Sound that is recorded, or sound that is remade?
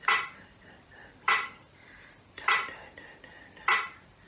recorded